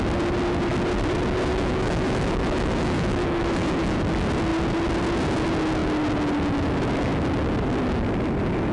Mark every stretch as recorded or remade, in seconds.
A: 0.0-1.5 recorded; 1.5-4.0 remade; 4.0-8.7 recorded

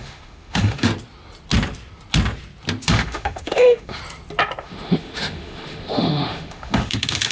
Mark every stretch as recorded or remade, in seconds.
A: 0.0-0.9 remade; 0.9-2.8 recorded; 2.8-4.0 remade; 4.0-4.6 recorded; 4.6-7.3 remade